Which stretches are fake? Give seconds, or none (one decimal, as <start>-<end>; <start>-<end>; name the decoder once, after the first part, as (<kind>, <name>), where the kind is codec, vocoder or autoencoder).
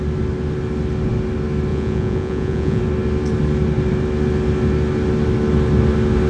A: 1.7-2.8 (vocoder, Vocos)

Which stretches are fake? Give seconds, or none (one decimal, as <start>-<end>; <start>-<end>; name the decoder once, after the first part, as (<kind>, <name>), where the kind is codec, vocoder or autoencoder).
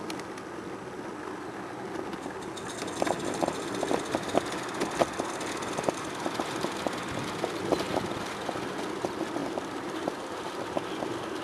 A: 9.4-10.9 (vocoder, BigVGAN v2)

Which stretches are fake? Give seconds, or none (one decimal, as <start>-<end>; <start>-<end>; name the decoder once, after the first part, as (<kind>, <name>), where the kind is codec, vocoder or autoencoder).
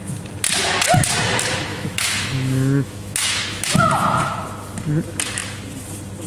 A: 1.7-3.8 (autoencoder, DAC-VAE)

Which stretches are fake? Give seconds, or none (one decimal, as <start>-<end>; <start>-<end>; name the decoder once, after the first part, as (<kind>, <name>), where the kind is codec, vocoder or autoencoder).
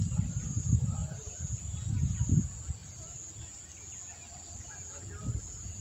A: none